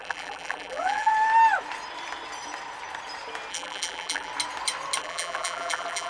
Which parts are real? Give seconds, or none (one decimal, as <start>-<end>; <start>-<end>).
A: 1.1-3.5; 4.3-5.0